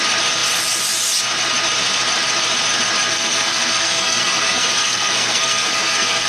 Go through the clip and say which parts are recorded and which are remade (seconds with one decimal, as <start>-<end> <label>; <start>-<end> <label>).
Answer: 0.0-3.1 recorded; 3.1-6.3 remade